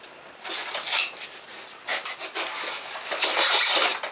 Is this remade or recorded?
recorded